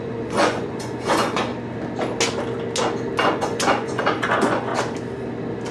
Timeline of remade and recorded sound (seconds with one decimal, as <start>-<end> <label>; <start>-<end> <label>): 0.0-1.5 remade; 1.5-3.2 recorded; 3.2-4.7 remade; 4.7-5.7 recorded